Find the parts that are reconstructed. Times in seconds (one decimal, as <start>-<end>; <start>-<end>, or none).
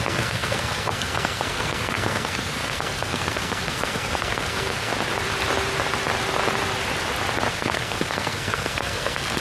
0.0-4.9; 7.5-9.4